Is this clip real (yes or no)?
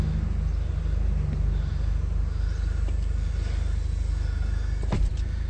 yes